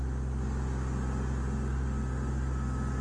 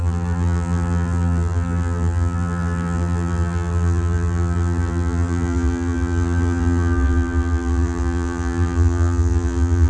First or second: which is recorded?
first